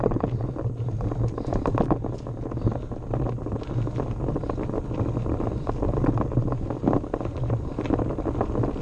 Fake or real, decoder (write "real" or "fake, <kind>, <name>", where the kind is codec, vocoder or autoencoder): real